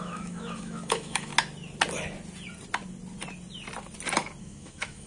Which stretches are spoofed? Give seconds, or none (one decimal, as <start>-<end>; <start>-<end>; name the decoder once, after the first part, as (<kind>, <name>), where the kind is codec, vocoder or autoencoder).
0.0-1.3 (autoencoder, DAC-VAE); 4.4-5.1